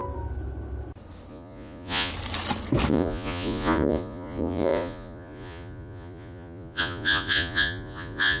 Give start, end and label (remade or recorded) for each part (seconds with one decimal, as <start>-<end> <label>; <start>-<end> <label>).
0.0-1.3 recorded; 1.3-2.1 remade; 2.1-2.9 recorded; 2.9-8.4 remade